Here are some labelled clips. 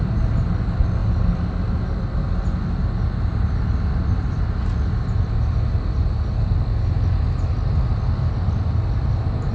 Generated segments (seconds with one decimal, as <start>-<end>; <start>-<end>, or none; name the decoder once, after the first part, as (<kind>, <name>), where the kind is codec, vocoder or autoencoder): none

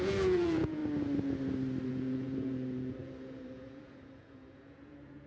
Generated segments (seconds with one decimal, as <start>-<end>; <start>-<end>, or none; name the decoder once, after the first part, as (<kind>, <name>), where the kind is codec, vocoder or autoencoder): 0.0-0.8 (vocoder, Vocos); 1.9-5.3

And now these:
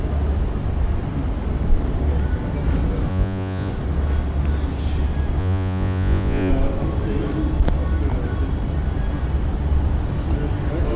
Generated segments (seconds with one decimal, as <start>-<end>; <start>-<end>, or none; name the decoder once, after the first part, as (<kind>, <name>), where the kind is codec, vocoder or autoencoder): 3.1-3.7 (vocoder, Vocos); 5.4-6.5

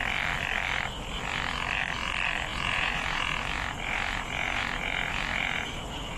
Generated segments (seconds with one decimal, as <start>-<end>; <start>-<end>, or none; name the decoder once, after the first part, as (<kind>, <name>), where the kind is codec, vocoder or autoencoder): 2.5-6.2 (vocoder, Vocos)

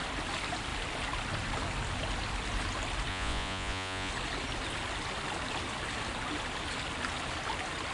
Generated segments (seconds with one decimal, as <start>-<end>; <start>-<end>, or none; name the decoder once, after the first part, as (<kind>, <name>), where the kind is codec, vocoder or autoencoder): 3.1-4.1 (vocoder, Vocos)

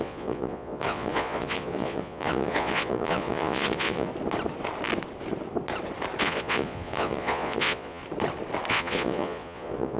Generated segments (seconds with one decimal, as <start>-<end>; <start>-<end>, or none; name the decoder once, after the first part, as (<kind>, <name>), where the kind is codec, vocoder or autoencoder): 0.0-4.1 (vocoder, Vocos); 6.2-8.0; 8.7-10.0

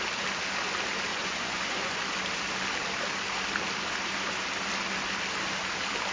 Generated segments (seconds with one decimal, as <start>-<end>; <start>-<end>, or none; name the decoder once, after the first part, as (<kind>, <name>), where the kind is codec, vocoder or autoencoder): 1.1-2.0 (vocoder, Vocos)